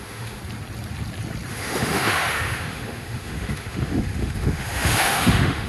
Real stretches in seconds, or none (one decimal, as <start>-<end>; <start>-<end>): 0.4-1.5